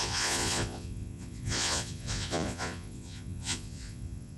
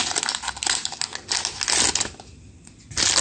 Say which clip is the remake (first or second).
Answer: first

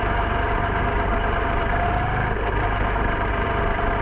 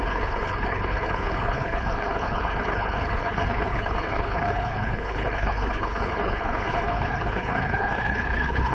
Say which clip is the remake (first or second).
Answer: second